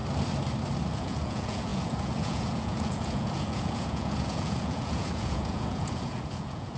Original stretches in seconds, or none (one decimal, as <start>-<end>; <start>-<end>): 0.0-1.0

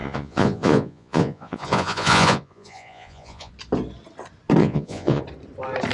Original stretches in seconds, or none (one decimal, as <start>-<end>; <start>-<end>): 3.5-4.6; 5.2-5.9